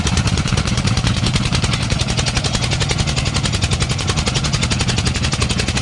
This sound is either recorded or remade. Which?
remade